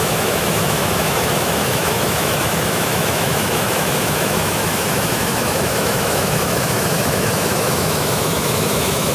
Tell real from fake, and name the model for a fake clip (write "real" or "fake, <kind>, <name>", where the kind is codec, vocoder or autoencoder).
fake, autoencoder, DAC-VAE